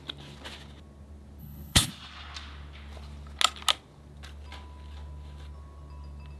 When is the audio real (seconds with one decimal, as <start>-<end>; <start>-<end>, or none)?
0.0-1.4; 1.9-6.4